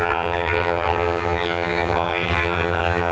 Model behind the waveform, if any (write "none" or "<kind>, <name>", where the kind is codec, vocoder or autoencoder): vocoder, HiFi-GAN